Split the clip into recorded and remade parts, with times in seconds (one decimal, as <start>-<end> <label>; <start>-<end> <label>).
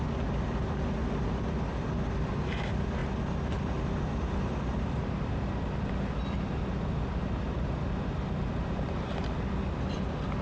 0.0-10.4 recorded